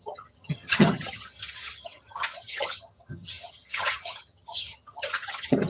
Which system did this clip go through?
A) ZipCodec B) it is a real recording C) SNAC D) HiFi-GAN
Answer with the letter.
D